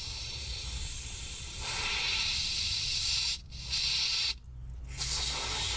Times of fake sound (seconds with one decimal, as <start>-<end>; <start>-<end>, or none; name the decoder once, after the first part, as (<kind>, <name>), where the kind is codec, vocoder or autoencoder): 0.0-2.9 (vocoder, BigVGAN v2)

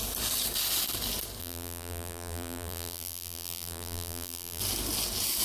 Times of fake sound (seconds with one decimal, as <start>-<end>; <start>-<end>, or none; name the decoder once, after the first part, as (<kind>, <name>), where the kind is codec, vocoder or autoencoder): 1.4-4.6 (vocoder, BigVGAN v2)